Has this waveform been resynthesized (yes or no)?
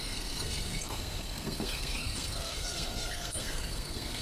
yes